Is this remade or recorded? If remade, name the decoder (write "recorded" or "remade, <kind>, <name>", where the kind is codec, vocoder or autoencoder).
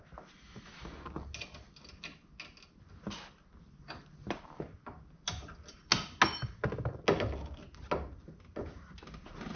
recorded